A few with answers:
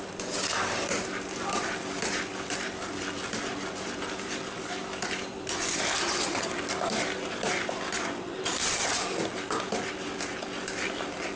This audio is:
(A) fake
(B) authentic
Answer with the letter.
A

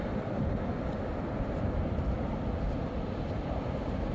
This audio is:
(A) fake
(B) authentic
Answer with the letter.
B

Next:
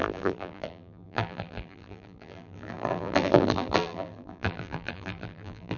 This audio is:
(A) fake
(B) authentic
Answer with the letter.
A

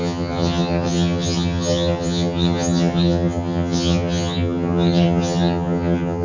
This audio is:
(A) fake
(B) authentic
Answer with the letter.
A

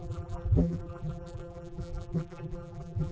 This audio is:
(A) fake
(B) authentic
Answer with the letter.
A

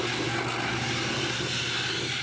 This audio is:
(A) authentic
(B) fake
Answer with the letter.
A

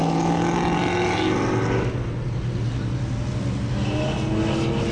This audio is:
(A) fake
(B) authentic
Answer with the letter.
B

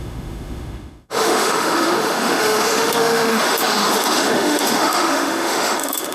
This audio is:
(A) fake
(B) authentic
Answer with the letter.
A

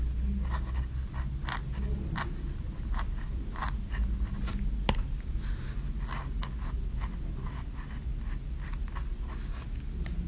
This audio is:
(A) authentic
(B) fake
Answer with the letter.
A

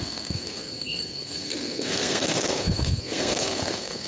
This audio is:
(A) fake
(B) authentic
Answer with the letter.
A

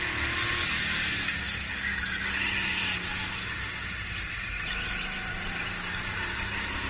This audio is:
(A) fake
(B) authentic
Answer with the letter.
B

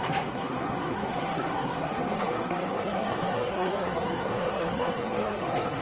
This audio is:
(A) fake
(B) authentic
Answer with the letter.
A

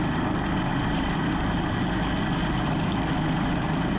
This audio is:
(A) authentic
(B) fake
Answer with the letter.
A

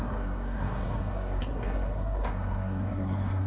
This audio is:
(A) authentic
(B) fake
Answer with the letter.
B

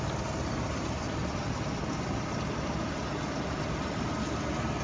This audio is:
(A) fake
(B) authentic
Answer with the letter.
B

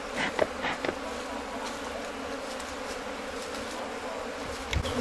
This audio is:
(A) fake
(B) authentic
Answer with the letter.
B